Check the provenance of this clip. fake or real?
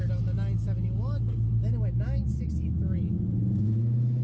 real